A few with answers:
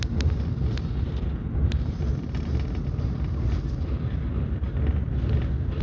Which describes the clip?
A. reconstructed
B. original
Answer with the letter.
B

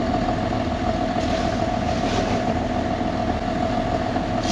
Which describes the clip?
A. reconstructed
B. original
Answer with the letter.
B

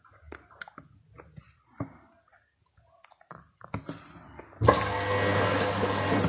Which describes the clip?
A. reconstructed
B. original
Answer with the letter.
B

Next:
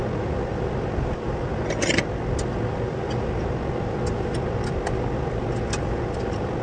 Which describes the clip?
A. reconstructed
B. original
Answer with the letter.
B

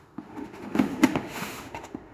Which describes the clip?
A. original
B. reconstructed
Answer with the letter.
B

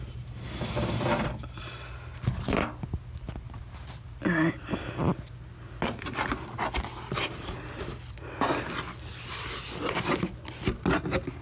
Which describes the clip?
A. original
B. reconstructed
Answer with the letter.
A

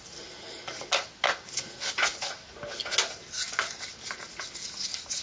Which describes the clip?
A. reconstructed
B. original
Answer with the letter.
B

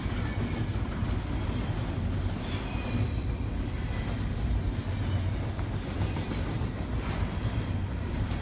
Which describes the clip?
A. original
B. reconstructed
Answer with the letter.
A